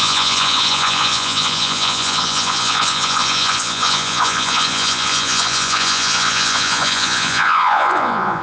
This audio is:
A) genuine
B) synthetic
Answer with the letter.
B